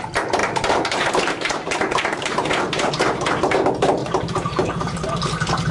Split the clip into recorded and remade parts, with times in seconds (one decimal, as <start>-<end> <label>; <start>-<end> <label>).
0.0-0.4 recorded; 0.4-2.9 remade; 2.9-4.0 recorded; 4.0-5.1 remade; 5.1-5.7 recorded